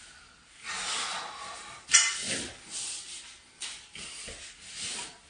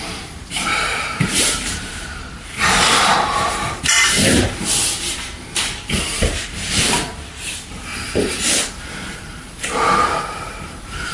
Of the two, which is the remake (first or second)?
second